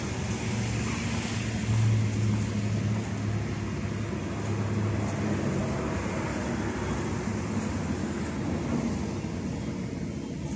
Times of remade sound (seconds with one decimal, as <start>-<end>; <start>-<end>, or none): none